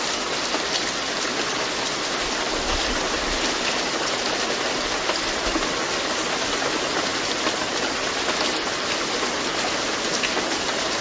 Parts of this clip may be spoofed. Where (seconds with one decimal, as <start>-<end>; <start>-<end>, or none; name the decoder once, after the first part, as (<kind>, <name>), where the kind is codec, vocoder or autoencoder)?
none